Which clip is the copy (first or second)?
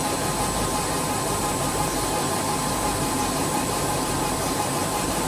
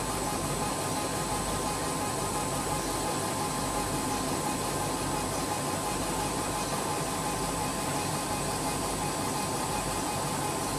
first